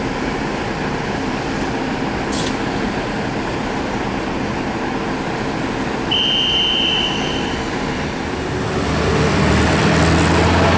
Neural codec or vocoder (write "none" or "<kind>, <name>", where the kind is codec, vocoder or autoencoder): none